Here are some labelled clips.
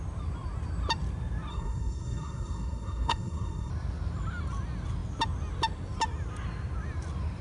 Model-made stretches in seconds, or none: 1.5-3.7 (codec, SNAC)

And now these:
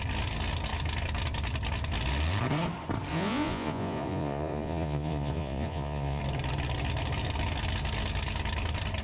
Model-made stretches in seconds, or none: 3.1-6.2 (vocoder, Vocos)

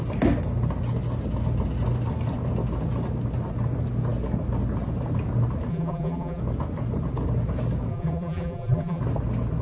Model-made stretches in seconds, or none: 5.7-6.4 (vocoder, BigVGAN v2); 7.9-9.0